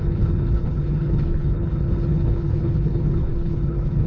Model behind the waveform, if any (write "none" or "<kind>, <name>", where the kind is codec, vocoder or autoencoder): codec, HILCodec